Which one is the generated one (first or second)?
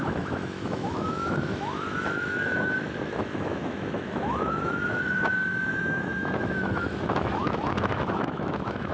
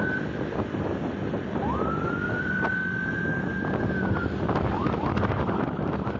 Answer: first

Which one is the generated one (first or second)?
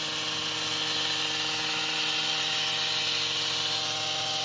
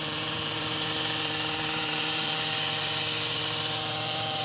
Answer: second